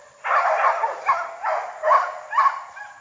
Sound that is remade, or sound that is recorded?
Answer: recorded